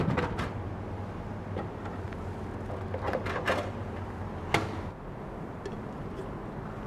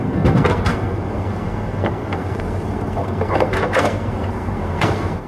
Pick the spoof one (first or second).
second